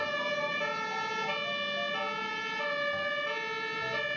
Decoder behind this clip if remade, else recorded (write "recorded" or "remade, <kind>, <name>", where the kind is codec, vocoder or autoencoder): recorded